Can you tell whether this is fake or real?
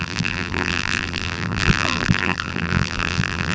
fake